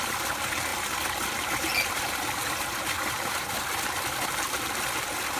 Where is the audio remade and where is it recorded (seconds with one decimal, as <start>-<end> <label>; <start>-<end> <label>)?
0.0-5.4 recorded